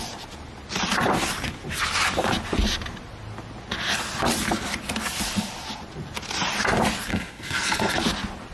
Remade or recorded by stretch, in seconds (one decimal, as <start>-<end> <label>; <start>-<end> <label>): 0.0-7.1 recorded; 7.1-8.0 remade; 8.0-8.5 recorded